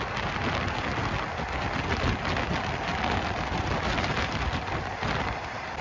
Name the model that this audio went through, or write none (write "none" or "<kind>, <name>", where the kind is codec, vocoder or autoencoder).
none